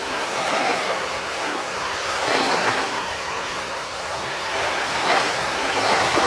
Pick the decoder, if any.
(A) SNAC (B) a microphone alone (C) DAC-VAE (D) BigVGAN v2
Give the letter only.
A